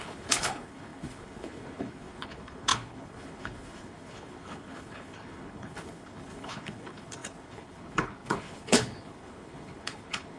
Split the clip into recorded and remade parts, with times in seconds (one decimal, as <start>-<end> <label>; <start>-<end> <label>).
0.0-10.4 remade